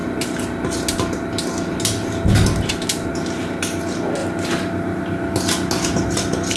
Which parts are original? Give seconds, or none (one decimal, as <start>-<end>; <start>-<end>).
0.0-6.6